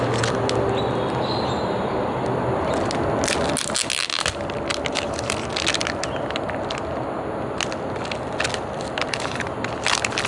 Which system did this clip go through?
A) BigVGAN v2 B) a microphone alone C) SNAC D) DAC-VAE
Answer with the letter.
B